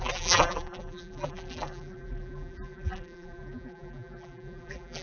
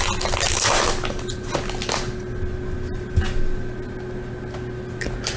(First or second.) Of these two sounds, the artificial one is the first